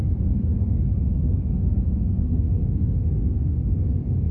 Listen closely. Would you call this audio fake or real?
fake